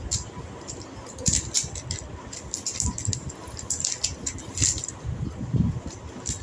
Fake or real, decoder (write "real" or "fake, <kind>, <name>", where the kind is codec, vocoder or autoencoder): real